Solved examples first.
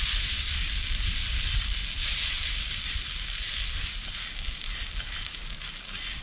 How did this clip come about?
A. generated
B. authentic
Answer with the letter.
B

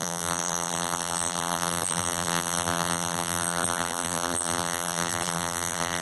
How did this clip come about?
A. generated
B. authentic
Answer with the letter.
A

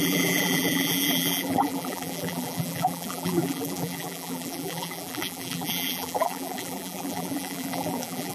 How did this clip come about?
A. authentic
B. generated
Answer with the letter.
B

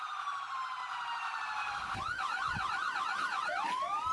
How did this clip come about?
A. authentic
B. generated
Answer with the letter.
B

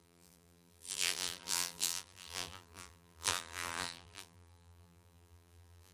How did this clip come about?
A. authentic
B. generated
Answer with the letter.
B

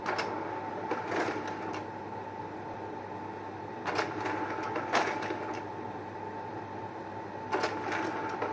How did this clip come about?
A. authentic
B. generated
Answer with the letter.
A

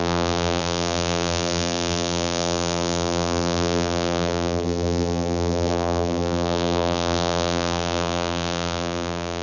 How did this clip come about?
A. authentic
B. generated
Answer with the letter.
B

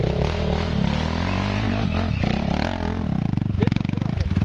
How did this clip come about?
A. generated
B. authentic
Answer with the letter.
B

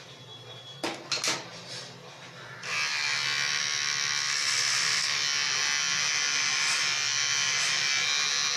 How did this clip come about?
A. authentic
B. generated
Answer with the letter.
A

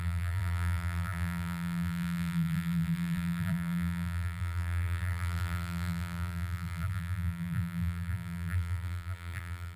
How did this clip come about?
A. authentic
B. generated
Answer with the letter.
B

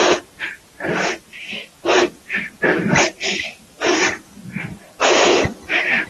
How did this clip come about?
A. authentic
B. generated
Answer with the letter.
B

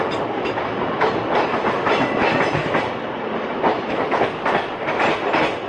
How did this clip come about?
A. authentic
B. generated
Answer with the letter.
A